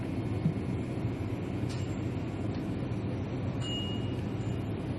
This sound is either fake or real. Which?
real